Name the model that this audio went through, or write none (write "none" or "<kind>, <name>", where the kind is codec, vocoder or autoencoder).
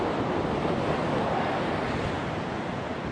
none